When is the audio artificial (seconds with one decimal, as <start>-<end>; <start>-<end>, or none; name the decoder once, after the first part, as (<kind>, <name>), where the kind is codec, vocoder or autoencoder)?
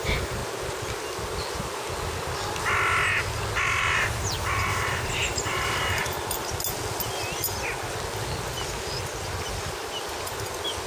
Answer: 0.0-0.4 (vocoder, BigVGAN v2); 3.8-6.0